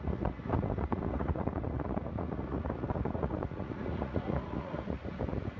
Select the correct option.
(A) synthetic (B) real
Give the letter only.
A